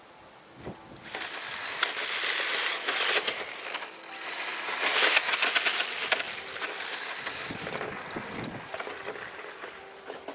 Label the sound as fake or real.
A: real